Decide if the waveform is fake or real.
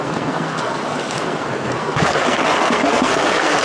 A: fake